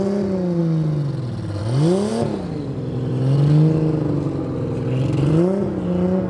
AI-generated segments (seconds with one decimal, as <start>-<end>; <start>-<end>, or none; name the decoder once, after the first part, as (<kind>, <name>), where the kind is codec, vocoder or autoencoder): none